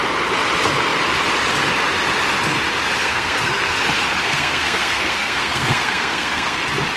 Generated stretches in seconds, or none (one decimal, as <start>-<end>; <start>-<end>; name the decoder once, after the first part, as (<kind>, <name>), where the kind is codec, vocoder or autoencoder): 3.0-3.7 (codec, SNAC); 4.2-6.6

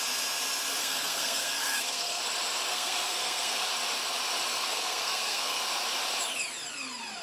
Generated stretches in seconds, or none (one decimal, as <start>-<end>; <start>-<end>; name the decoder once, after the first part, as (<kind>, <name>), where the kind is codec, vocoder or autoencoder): 0.8-2.2 (codec, SNAC); 2.7-3.7; 4.5-5.6

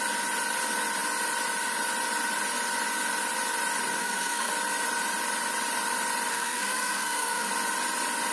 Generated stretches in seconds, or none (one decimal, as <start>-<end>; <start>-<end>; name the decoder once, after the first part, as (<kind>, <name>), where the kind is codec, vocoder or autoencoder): 4.0-4.5 (codec, SNAC); 6.3-7.5

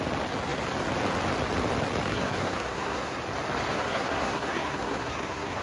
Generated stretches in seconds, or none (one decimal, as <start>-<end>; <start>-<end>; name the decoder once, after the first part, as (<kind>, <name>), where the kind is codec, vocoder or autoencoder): 2.1-3.2 (codec, SNAC); 3.7-5.6

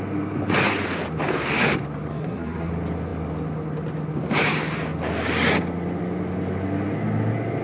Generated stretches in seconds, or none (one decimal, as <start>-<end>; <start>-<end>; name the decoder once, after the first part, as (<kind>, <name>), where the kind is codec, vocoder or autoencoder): 2.1-2.7 (codec, SNAC)